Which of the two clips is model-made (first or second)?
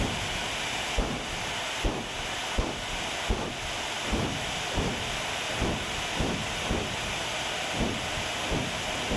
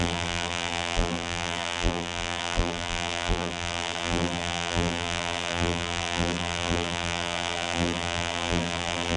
second